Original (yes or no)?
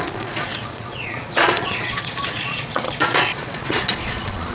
no